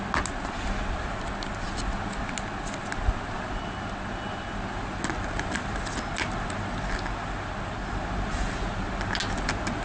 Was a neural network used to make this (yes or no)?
no